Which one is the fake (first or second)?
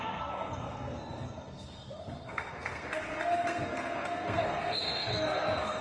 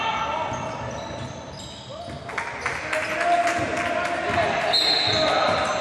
first